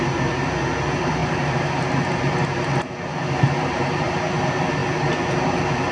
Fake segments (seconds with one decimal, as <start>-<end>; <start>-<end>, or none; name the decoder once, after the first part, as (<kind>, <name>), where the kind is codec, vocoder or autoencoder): 1.2-4.2 (vocoder, BigVGAN v2)